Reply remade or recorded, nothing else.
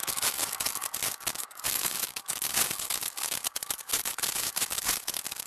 remade